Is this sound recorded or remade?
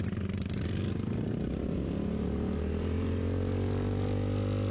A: recorded